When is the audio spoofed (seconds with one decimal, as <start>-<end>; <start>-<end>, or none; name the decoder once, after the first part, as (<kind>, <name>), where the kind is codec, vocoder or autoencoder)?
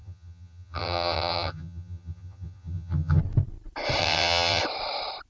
0.0-3.2 (vocoder, HiFi-GAN); 4.0-4.6